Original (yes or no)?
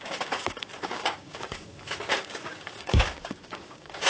no